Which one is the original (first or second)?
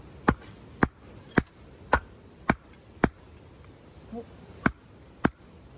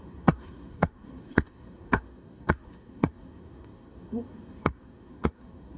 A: first